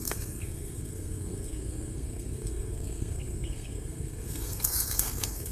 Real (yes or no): no